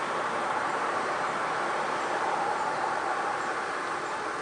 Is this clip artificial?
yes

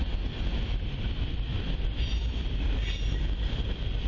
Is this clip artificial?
no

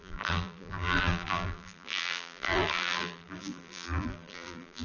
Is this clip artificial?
yes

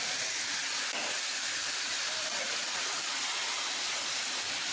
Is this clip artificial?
yes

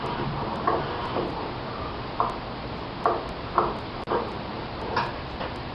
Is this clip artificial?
no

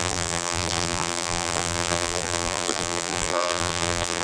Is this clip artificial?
yes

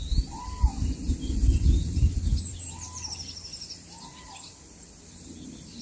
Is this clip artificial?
yes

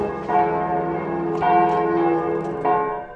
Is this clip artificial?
no